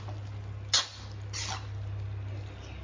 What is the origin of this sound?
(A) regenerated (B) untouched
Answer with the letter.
B